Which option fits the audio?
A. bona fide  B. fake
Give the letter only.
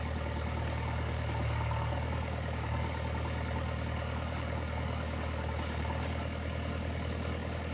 B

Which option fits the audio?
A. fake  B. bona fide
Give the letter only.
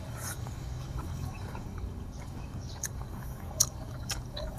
A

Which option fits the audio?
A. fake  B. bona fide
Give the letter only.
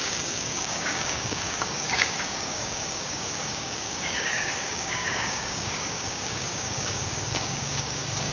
A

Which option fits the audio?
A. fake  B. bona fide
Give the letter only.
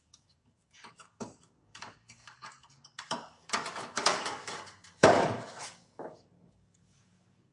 A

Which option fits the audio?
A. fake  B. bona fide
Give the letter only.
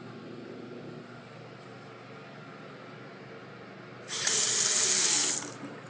B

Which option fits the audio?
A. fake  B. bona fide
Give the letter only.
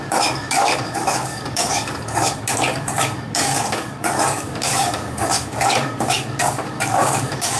A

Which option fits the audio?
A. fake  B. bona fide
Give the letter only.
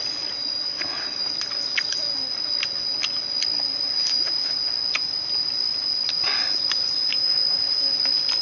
B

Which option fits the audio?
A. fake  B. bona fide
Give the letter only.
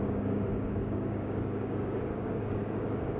A